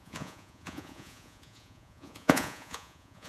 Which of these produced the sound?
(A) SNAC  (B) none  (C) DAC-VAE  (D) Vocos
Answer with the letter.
D